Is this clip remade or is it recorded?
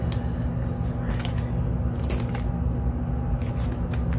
recorded